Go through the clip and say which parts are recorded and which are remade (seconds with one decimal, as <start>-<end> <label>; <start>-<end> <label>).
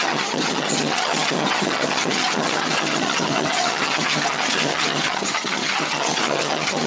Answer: 0.0-6.9 remade